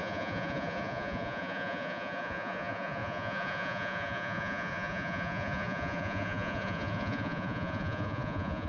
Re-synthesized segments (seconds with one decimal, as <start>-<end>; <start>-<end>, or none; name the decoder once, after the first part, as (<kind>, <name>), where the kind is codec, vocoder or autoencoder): 0.0-8.7 (vocoder, Vocos)